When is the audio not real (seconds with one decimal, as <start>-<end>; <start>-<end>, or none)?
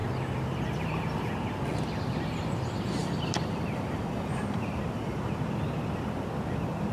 3.0-5.2